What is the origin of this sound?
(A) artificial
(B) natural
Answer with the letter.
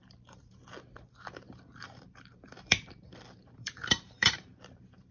A